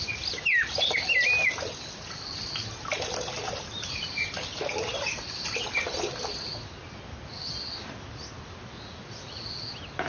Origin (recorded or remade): recorded